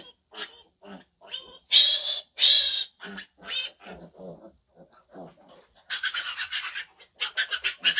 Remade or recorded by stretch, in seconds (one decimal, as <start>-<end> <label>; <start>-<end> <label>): 0.0-1.4 recorded; 1.4-3.1 remade; 3.1-5.3 recorded; 5.3-6.8 remade; 6.8-8.0 recorded